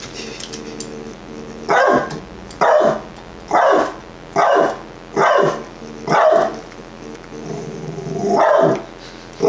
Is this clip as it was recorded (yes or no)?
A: yes